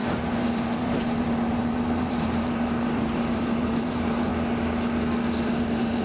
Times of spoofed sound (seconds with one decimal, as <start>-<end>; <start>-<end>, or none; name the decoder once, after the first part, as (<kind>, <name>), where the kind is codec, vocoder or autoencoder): 0.0-4.3 (vocoder, BigVGAN v2); 5.4-6.0